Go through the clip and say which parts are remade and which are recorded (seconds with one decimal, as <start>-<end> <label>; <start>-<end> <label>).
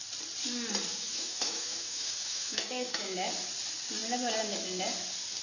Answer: 0.0-0.9 recorded; 0.9-3.3 remade; 3.3-5.4 recorded